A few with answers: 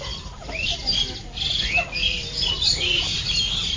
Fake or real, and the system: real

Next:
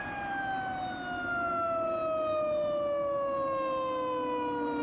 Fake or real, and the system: real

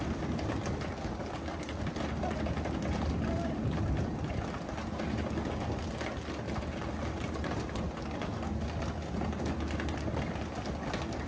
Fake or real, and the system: real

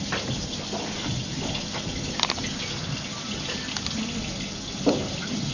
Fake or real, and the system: real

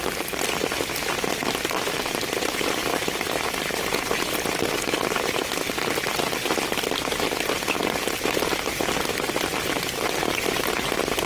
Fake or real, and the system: real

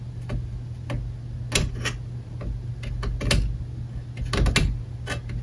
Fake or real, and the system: real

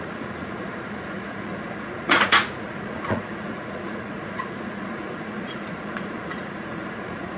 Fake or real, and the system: fake, vocoder, Vocos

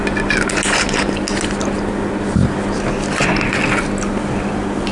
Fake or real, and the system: real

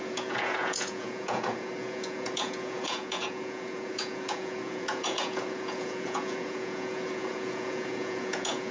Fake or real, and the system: fake, vocoder, Vocos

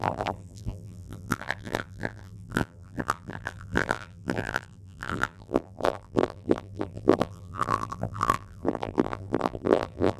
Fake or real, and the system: fake, vocoder, BigVGAN v2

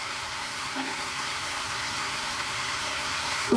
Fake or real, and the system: fake, codec, SNAC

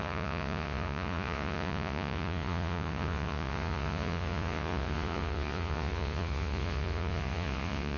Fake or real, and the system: fake, vocoder, Vocos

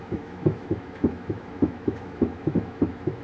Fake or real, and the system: fake, autoencoder, DAC-VAE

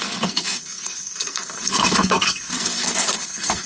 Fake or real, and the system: fake, codec, SNAC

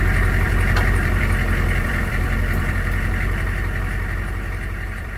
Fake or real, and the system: fake, vocoder, BigVGAN v2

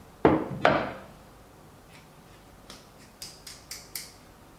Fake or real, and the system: fake, vocoder, BigVGAN v2